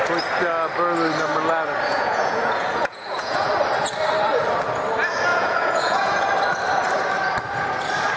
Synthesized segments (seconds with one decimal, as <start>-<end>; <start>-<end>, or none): 1.9-3.5; 5.3-6.3